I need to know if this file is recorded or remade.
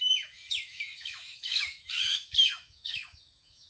remade